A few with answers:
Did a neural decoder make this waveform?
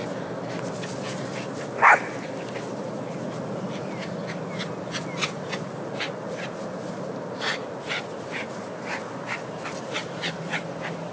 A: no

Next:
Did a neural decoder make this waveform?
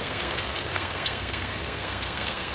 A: yes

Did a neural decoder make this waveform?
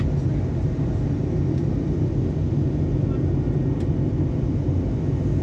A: no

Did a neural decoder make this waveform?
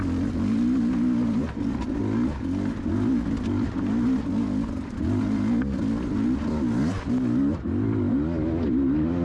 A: no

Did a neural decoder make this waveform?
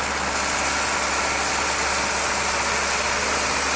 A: no